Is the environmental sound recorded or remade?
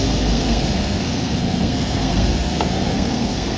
remade